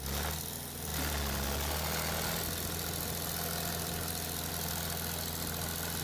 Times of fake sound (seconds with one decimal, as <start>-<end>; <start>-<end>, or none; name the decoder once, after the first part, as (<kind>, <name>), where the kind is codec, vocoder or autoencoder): none